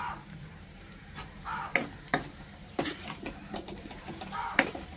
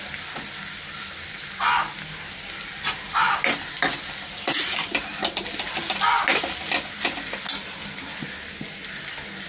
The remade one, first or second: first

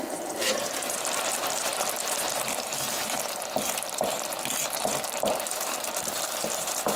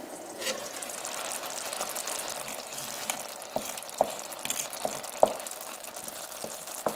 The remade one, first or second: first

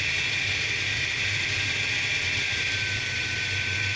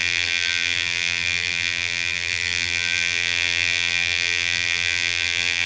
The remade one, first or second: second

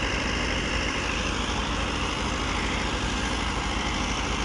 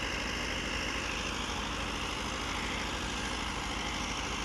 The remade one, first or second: first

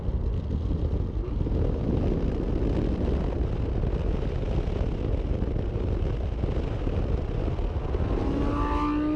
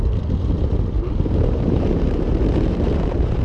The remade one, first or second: second